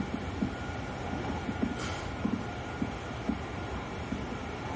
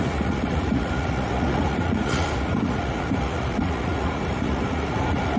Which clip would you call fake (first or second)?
second